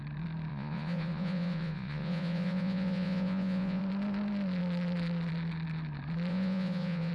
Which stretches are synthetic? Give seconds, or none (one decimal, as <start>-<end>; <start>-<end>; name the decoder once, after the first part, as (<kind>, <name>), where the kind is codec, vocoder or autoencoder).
0.5-3.8 (vocoder, Vocos); 6.3-7.1

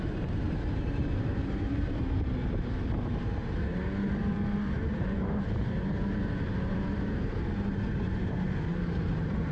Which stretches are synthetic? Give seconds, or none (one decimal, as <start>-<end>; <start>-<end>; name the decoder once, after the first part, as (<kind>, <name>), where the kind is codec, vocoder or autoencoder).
0.0-9.5 (vocoder, BigVGAN v2)

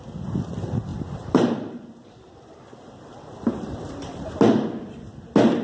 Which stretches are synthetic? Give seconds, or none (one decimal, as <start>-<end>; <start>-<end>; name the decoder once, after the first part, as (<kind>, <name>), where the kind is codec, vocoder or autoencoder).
0.9-4.3 (vocoder, BigVGAN v2)

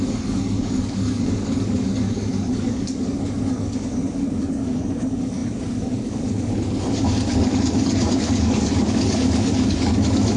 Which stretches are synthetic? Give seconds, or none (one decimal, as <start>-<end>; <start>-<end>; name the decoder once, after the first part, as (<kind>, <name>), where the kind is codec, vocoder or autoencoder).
0.0-10.4 (codec, DAC)

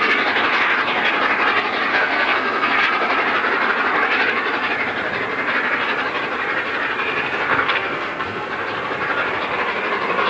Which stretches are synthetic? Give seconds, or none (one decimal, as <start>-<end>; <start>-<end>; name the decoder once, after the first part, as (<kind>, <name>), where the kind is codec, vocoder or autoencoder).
1.9-2.8 (codec, SNAC); 7.5-8.5